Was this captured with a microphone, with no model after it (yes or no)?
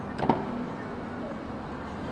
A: yes